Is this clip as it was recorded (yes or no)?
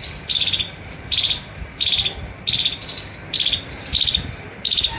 yes